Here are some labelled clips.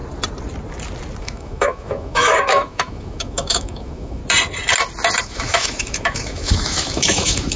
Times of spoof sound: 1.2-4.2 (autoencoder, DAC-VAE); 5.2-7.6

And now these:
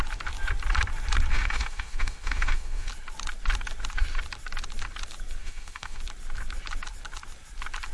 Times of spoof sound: 1.3-2.9 (autoencoder, DAC-VAE); 5.4-6.0

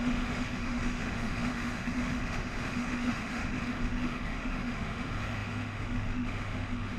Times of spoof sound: 0.0-7.0 (autoencoder, DAC-VAE)

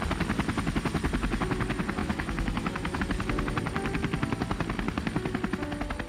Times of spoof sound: 2.0-3.0 (autoencoder, DAC-VAE)

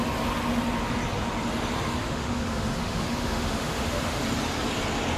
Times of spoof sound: 2.0-4.2 (autoencoder, DAC-VAE)

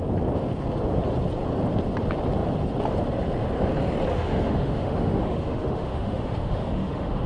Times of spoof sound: 4.1-7.3 (autoencoder, DAC-VAE)

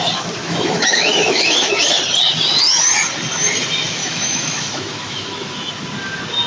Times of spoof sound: 0.4-2.0 (autoencoder, DAC-VAE); 4.0-5.7

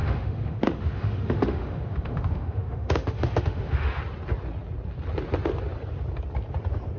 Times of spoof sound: 0.0-4.0 (autoencoder, DAC-VAE)